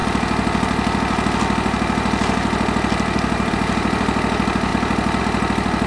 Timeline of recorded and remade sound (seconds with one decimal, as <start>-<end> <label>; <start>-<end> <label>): 0.0-5.9 recorded